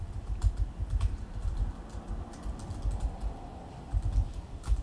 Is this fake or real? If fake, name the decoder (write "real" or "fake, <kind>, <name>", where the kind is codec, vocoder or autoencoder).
real